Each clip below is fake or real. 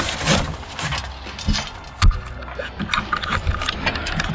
real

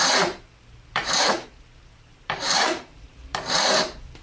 fake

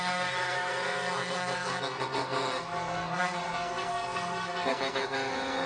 fake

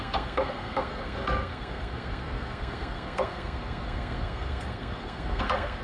fake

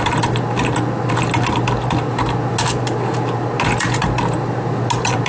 real